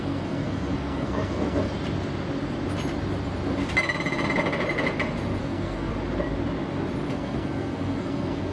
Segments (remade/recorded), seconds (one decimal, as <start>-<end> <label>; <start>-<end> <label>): 0.0-1.7 remade; 1.7-5.4 recorded; 5.4-5.9 remade; 5.9-7.1 recorded; 7.1-8.5 remade